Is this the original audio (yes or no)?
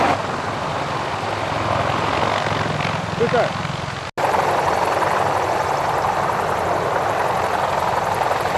yes